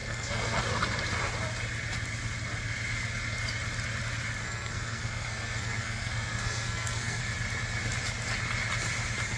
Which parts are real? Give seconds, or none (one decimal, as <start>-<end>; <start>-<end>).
0.6-4.4; 7.2-9.4